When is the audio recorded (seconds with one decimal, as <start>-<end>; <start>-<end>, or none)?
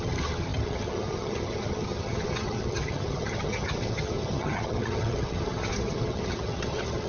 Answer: none